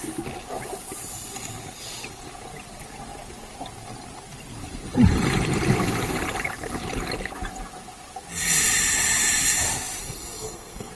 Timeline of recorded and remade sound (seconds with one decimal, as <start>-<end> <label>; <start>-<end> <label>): 0.0-10.0 recorded; 10.0-10.9 remade